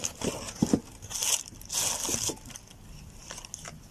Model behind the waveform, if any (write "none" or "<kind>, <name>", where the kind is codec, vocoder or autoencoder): none